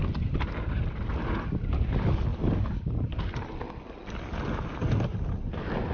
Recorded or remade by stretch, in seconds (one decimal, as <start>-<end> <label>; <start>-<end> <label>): 0.0-5.9 recorded